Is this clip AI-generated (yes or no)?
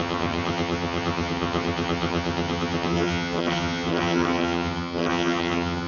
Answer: yes